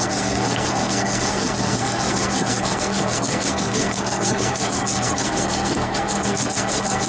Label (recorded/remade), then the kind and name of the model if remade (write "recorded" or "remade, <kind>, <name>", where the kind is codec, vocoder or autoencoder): remade, codec, SNAC